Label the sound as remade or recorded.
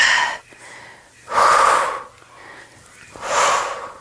recorded